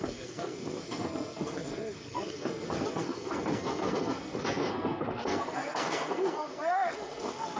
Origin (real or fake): fake